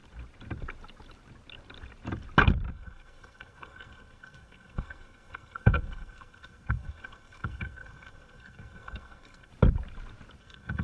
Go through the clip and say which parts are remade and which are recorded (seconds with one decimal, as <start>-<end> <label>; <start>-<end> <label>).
0.0-2.7 recorded; 2.7-9.5 remade; 9.5-10.4 recorded; 10.4-10.8 remade